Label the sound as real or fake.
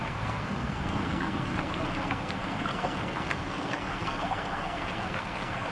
fake